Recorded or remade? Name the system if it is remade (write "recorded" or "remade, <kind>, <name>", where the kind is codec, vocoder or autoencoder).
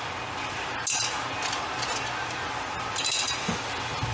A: recorded